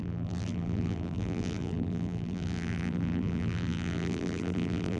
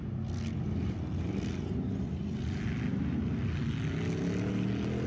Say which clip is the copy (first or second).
first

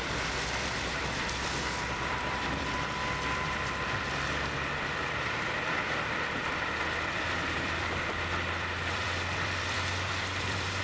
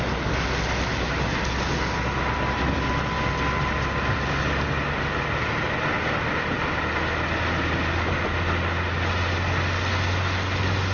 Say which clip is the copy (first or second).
first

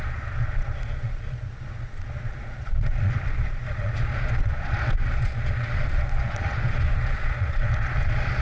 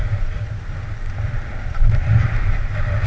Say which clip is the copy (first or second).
first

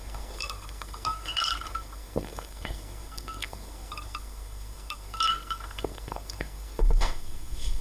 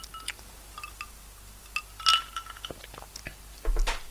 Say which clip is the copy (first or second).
first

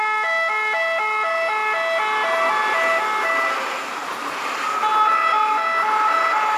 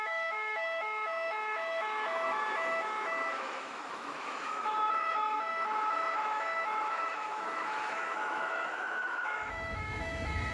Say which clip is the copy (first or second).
second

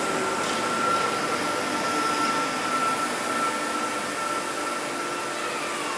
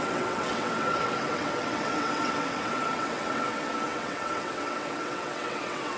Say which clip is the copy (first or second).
second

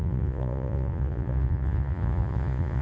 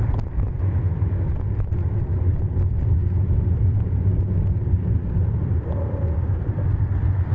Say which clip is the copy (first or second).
first